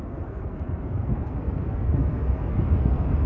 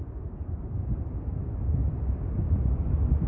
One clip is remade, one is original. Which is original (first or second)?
second